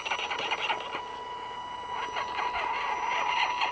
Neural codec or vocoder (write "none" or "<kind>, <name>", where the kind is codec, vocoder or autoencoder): none